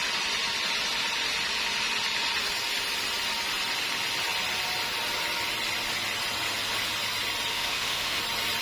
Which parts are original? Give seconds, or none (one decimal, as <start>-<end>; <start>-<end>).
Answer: 0.0-7.5; 8.2-8.6